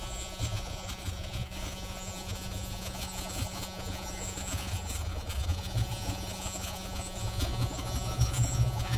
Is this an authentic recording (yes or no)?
no